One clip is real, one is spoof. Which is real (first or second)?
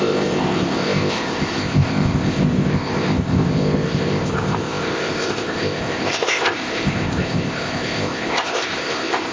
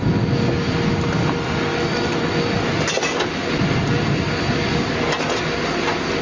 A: second